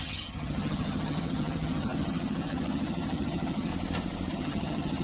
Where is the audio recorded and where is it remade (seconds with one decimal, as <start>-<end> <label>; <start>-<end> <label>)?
0.0-3.7 remade; 3.7-4.3 recorded; 4.3-5.0 remade